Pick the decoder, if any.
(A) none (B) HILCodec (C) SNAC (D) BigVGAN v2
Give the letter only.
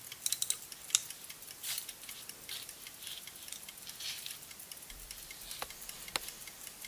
A